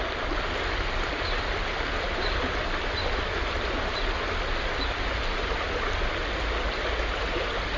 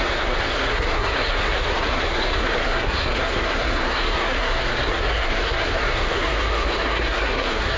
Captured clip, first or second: first